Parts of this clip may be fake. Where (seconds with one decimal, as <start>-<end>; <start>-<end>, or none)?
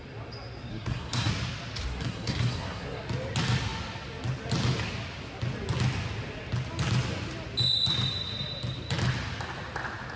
0.7-1.3; 1.9-3.0